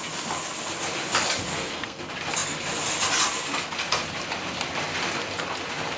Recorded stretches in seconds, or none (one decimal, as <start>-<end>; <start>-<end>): 0.0-1.5; 2.0-6.0